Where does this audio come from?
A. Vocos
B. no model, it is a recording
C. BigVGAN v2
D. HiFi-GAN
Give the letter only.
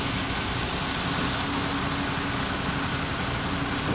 B